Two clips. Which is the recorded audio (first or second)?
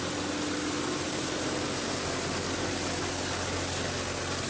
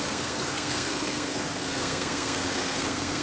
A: first